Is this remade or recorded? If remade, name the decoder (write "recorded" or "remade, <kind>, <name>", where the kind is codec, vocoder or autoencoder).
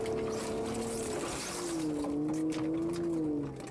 recorded